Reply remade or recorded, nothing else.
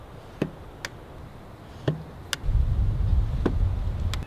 recorded